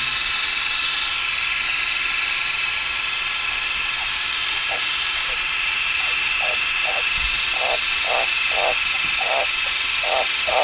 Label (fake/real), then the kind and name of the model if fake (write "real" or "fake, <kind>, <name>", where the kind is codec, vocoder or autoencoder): real